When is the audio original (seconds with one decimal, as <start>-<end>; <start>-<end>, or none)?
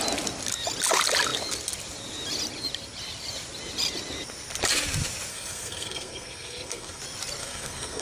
0.0-5.3; 7.0-7.4